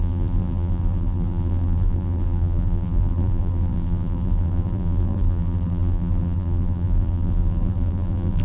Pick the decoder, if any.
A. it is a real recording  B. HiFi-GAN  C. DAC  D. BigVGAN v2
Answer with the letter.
D